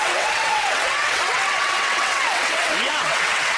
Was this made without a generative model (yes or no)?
no